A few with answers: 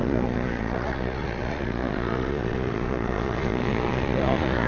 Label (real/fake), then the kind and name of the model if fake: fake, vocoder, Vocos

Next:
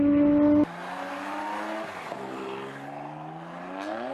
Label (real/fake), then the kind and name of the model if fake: real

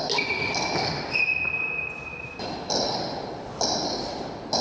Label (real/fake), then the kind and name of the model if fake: real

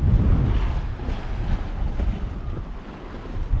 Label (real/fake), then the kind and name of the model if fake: real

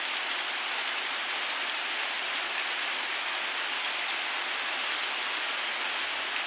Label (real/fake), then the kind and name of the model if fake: real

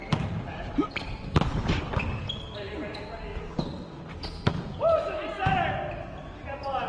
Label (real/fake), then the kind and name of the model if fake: real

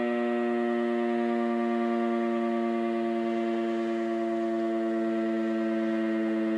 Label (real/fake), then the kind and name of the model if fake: real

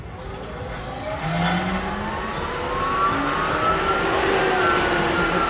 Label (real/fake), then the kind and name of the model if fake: real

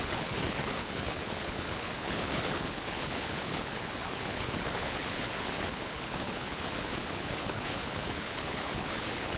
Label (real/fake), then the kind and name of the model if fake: fake, codec, HILCodec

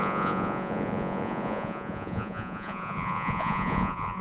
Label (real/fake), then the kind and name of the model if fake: fake, vocoder, Vocos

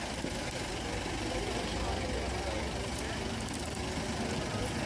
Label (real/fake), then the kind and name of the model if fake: real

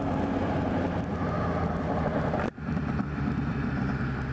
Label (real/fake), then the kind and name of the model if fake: real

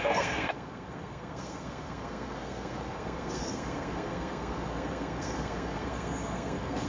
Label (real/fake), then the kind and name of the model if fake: fake, codec, SNAC